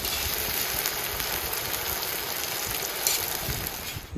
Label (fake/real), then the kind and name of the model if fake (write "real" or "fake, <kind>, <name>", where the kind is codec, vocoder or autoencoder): real